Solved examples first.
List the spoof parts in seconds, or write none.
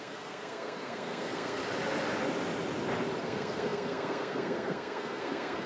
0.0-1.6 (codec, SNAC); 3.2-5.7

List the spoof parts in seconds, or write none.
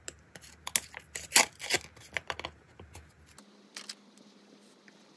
none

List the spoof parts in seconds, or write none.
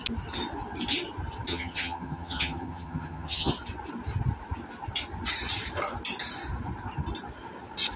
1.5-3.5 (vocoder, HiFi-GAN)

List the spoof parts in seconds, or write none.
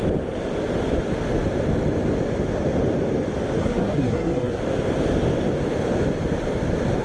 3.6-4.6 (codec, SNAC)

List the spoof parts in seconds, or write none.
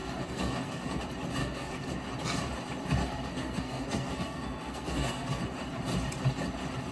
0.0-1.0 (codec, SNAC); 1.4-1.9; 3.0-5.4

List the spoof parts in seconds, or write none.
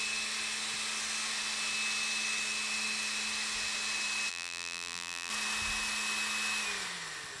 4.3-5.3 (vocoder, BigVGAN v2)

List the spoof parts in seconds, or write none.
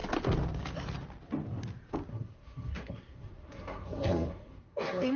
2.1-5.2 (codec, SNAC)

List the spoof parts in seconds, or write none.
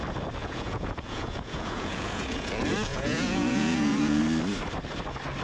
0.4-2.5 (vocoder, Vocos); 2.9-4.2